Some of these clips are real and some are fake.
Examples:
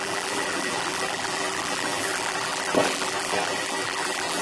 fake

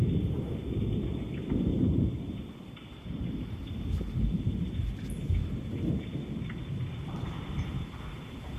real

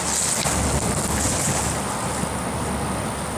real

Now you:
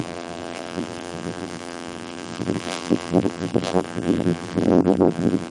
fake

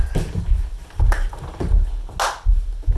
real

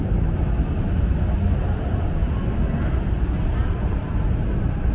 real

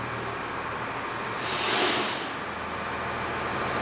real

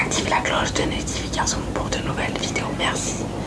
fake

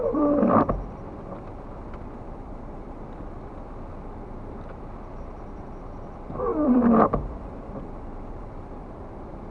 fake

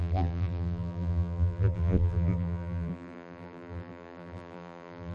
fake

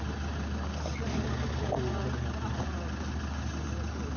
real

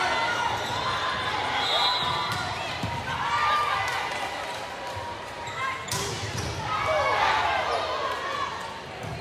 real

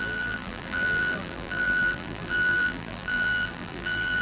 fake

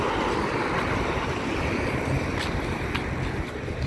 real